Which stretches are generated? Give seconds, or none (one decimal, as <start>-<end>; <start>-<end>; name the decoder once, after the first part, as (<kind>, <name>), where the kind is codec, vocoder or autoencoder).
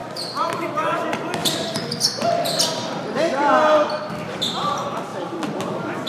1.4-2.6 (vocoder, BigVGAN v2); 5.1-5.6